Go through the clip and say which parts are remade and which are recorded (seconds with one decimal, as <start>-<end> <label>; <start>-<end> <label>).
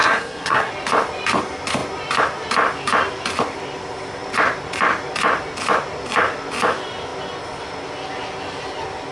0.0-0.7 remade; 0.7-9.1 recorded